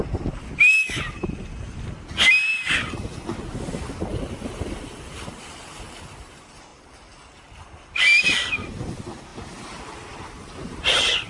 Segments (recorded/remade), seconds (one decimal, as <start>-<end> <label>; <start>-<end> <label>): 0.0-11.3 recorded